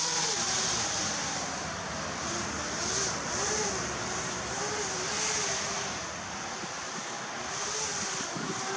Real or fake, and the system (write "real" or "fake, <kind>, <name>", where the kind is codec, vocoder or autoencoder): fake, vocoder, BigVGAN v2